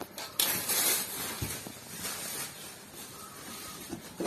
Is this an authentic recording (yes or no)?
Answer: yes